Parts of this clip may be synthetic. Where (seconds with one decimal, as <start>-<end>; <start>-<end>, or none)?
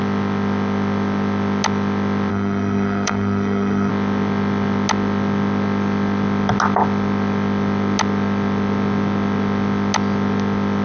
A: 2.3-3.9